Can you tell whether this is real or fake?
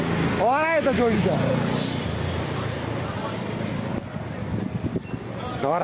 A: real